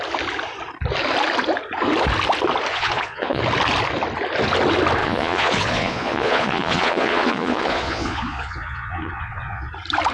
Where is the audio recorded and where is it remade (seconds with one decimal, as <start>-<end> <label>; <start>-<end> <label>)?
0.0-2.7 recorded; 2.7-3.4 remade; 3.4-5.0 recorded; 5.0-9.7 remade; 9.7-10.1 recorded